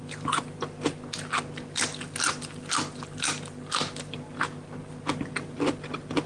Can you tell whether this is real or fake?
real